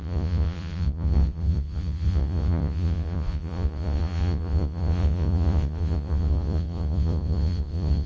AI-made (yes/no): yes